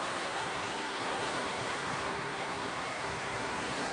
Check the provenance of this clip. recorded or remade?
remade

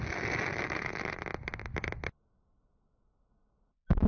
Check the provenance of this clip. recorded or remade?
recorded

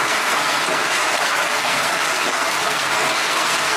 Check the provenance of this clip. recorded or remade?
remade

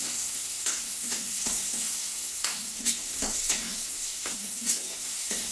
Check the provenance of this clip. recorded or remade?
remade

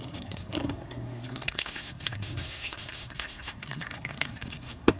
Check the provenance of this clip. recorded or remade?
remade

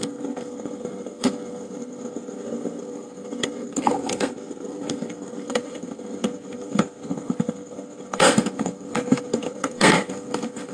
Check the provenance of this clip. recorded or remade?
remade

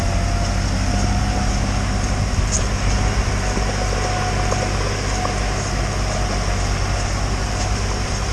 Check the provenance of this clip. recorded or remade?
recorded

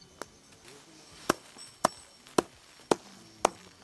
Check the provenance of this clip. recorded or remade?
recorded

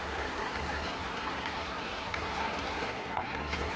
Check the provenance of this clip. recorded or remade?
remade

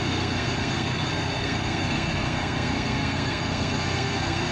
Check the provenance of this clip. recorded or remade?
remade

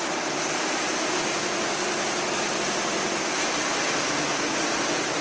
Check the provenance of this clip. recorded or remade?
recorded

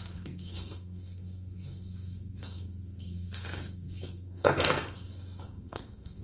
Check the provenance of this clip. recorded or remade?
remade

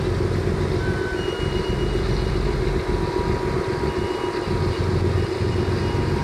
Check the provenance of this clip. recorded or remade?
recorded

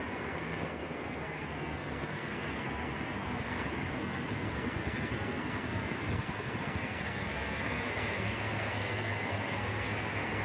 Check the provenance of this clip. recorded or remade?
remade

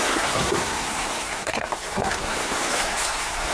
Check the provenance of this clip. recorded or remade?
remade